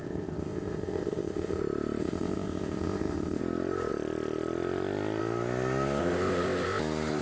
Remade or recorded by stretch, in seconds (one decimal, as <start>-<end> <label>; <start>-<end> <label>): 0.0-1.6 remade; 1.6-2.0 recorded; 2.0-3.4 remade; 3.4-6.0 recorded; 6.0-6.8 remade; 6.8-7.2 recorded